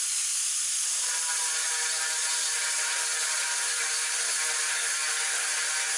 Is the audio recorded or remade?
recorded